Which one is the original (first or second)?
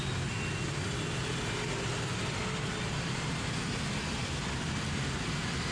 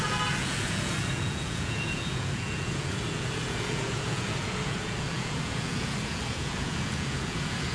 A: first